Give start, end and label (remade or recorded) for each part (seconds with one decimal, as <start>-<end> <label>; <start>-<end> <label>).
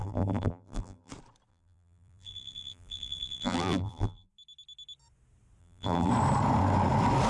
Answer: 0.0-1.1 remade; 1.1-1.5 recorded; 1.5-4.3 remade; 4.3-5.6 recorded; 5.6-6.1 remade; 6.1-7.3 recorded